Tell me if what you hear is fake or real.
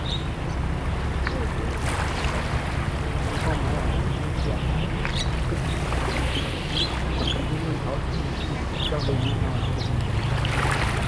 real